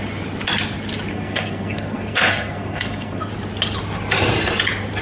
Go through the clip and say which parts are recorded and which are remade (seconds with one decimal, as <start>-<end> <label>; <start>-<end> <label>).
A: 0.0-1.1 recorded; 1.1-3.3 remade; 3.3-5.0 recorded

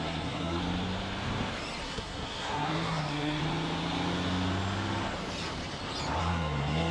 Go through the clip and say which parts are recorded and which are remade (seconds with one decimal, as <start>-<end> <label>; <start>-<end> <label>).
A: 0.0-0.6 remade; 0.6-1.8 recorded; 1.8-3.4 remade; 3.4-6.2 recorded; 6.2-6.9 remade

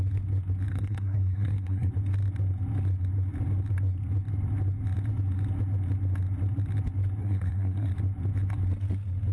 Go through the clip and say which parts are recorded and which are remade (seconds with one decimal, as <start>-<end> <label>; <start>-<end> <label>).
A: 0.0-0.7 recorded; 0.7-1.9 remade; 1.9-7.2 recorded; 7.2-7.9 remade; 7.9-9.3 recorded